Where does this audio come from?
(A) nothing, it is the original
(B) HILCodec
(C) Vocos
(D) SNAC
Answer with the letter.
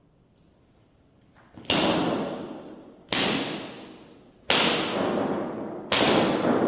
A